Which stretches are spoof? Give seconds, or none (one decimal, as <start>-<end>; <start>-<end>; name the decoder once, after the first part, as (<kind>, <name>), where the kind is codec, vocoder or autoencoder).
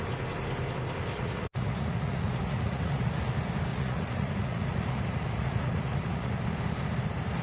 1.1-3.2 (vocoder, Vocos); 3.7-6.3